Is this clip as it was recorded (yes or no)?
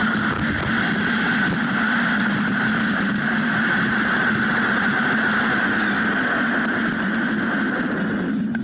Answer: yes